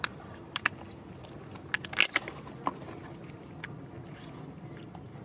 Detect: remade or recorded recorded